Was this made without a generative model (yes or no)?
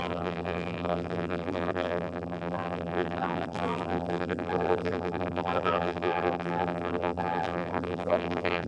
no